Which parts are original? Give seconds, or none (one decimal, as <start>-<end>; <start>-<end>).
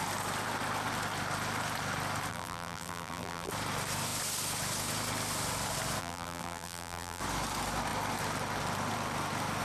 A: 0.0-2.3; 3.5-6.0; 7.2-9.6